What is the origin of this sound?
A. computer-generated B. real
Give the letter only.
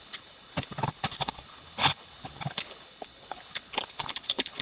A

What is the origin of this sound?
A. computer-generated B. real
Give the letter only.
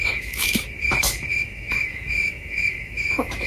A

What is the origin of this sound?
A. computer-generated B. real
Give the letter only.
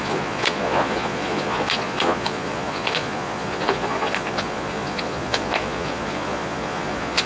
A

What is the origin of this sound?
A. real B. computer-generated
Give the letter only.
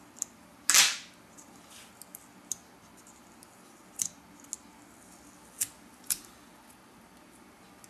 A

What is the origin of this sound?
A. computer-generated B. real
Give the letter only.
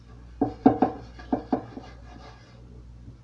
B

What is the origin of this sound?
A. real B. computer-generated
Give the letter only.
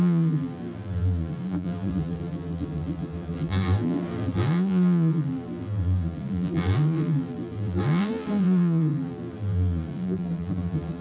B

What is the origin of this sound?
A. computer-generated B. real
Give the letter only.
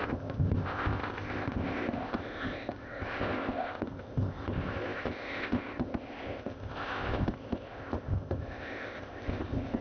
A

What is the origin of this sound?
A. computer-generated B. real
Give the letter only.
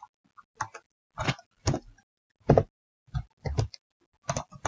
B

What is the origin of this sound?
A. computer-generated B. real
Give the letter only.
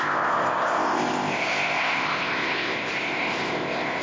A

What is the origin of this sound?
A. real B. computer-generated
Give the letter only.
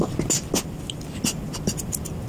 A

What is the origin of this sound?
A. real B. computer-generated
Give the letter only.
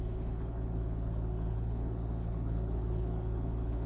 B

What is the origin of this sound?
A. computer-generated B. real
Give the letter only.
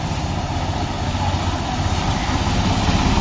B